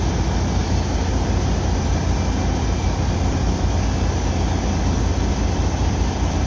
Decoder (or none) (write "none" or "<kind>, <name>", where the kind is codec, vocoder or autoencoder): none